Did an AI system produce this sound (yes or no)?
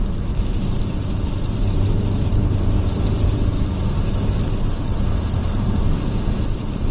yes